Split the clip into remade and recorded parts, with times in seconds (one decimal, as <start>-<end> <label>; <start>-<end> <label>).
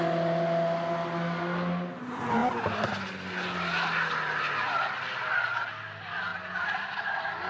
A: 0.0-7.5 recorded